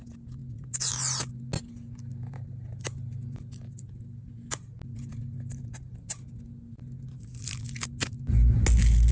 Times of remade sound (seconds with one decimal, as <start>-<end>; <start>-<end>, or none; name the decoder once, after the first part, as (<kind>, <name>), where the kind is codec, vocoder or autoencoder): none